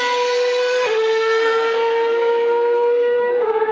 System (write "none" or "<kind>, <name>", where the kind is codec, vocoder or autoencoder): codec, SNAC